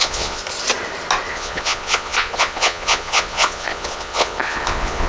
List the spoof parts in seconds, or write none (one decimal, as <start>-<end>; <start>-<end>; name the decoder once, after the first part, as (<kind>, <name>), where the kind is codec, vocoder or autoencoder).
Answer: 0.0-0.4 (vocoder, Vocos); 1.3-5.1